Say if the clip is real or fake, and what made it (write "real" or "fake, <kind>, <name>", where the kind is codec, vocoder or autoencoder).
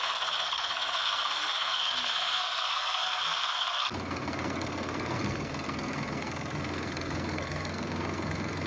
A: fake, codec, SNAC